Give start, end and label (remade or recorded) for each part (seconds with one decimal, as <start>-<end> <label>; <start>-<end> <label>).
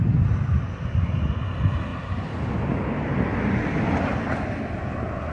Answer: 0.0-5.3 recorded